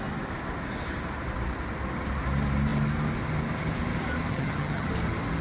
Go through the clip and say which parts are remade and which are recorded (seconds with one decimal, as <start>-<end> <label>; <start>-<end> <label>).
0.0-4.3 recorded; 4.3-4.9 remade; 4.9-5.4 recorded